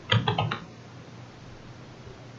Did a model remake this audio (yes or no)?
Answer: no